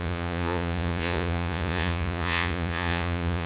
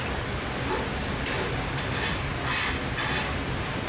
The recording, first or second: second